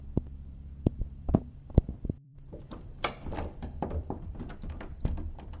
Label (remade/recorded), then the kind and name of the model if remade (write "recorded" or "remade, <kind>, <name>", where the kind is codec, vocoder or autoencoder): remade, vocoder, BigVGAN v2